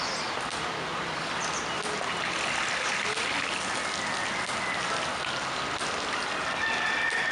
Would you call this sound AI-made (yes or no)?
no